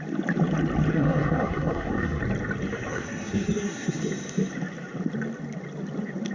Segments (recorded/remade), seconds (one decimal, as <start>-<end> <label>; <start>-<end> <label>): 0.0-0.9 recorded; 0.9-2.2 remade; 2.2-2.9 recorded; 2.9-4.0 remade; 4.0-6.3 recorded